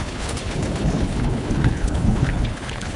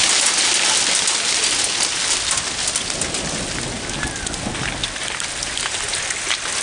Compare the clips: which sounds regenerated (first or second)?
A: first